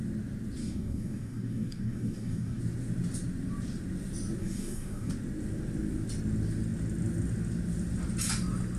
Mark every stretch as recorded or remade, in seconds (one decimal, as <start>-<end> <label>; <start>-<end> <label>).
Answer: 0.0-0.6 recorded; 0.6-2.6 remade; 2.6-4.4 recorded; 4.4-5.1 remade; 5.1-8.8 recorded